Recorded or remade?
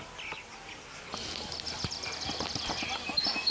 recorded